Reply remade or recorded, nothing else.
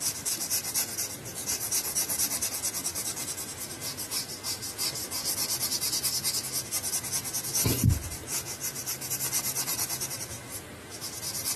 recorded